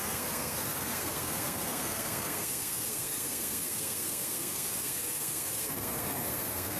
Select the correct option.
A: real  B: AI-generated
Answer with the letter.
B